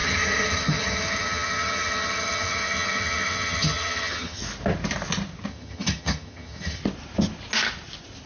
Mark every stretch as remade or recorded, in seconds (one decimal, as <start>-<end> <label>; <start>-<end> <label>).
0.0-4.4 remade; 4.4-5.5 recorded; 5.5-6.8 remade; 6.8-8.3 recorded